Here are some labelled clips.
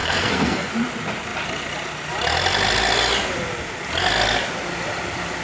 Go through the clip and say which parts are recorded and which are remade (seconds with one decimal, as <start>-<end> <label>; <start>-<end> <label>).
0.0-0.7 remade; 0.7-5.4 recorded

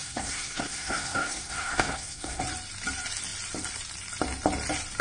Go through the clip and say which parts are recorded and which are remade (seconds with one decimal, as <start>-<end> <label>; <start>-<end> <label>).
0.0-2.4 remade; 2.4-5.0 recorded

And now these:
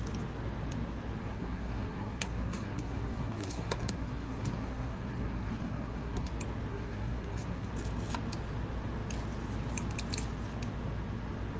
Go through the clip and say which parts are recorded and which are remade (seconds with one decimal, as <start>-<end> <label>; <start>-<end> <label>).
0.0-1.2 recorded; 1.2-6.3 remade; 6.3-6.7 recorded; 6.7-7.7 remade; 7.7-11.6 recorded

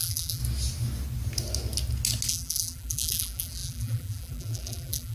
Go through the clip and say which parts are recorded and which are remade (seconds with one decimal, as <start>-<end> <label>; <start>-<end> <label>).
0.0-0.4 remade; 0.4-2.3 recorded; 2.3-5.1 remade

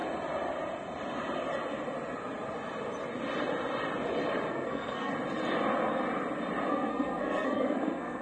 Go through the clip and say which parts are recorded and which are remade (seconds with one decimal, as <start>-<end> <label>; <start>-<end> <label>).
0.0-4.5 recorded; 4.5-5.1 remade; 5.1-6.7 recorded; 6.7-8.2 remade

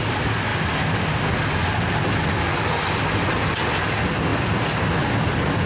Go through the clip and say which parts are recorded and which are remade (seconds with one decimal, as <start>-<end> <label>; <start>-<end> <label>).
0.0-0.5 recorded; 0.5-1.0 remade; 1.0-5.7 recorded

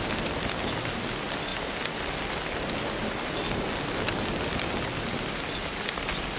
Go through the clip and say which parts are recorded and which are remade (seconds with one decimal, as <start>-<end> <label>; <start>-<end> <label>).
0.0-6.4 recorded